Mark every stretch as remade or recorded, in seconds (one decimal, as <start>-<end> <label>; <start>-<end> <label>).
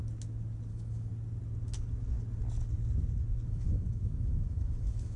0.0-0.7 recorded; 0.7-1.1 remade; 1.1-3.5 recorded; 3.5-5.2 remade